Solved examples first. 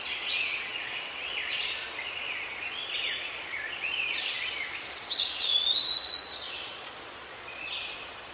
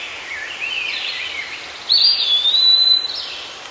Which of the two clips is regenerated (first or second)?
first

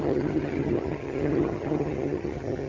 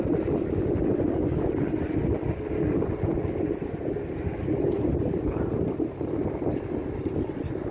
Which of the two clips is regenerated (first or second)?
first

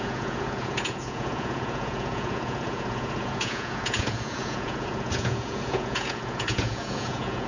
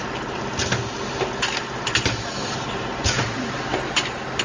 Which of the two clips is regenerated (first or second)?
first